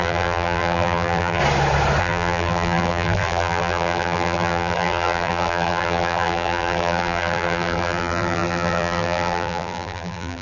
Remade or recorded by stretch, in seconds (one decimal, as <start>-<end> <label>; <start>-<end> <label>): 0.0-1.4 remade; 1.4-2.0 recorded; 2.0-10.4 remade